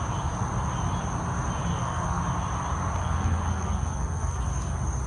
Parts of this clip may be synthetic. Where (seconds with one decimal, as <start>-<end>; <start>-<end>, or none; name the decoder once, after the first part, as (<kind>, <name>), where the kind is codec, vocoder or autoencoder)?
1.7-2.2 (codec, SNAC); 3.0-4.4